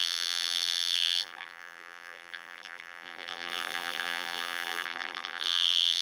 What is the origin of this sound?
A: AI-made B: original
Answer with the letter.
A